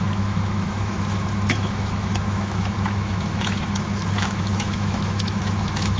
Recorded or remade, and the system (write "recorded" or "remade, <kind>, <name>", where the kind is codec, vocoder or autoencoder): remade, autoencoder, DAC-VAE